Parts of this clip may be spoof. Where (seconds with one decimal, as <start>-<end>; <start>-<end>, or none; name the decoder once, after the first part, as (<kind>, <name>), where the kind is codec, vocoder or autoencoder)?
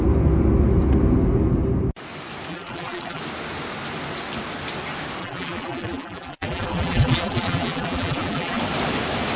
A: 2.5-3.2 (vocoder, BigVGAN v2); 5.2-8.6